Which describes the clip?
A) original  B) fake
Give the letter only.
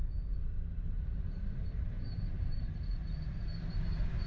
B